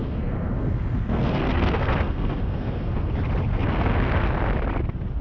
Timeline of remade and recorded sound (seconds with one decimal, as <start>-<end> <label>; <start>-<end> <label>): 0.0-3.1 remade; 3.1-3.5 recorded; 3.5-4.3 remade; 4.3-5.2 recorded